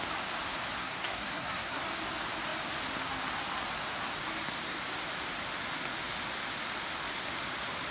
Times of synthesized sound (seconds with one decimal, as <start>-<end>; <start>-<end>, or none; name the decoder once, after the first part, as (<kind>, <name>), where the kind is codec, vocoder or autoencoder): 0.8-1.8 (codec, SNAC)